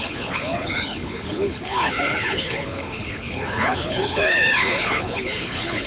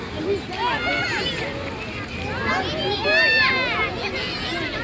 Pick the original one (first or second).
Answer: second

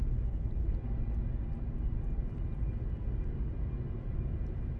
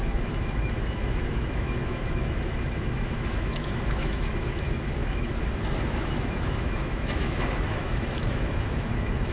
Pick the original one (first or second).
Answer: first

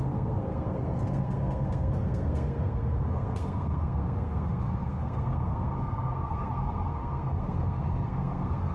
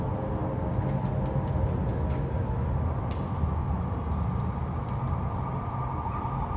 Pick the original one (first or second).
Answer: second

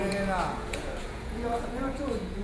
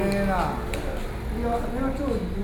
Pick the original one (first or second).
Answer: second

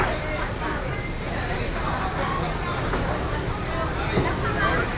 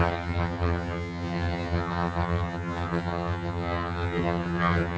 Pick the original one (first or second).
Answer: first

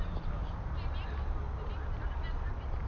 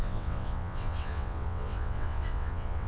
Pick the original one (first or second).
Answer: first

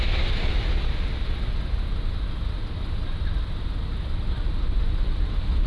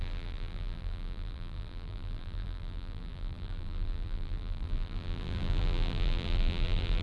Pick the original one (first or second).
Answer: first